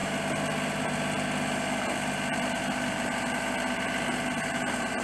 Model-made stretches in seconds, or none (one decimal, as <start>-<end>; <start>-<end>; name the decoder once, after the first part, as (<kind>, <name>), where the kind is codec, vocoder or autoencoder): none